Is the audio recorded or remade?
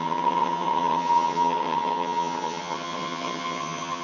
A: remade